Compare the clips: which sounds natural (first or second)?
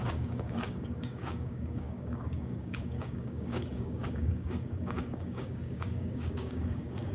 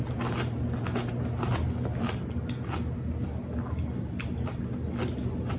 second